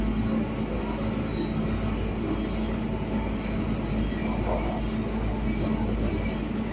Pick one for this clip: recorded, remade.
recorded